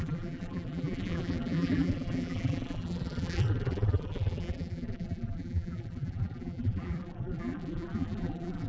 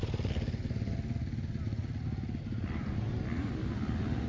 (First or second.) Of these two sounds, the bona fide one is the second